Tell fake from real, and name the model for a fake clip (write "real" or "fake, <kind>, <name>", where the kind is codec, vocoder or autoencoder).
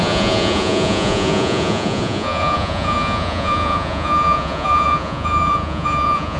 fake, vocoder, Vocos